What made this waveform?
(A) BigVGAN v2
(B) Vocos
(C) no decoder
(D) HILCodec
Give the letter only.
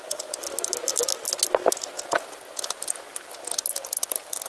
C